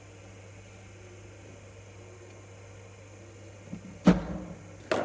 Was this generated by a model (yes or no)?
no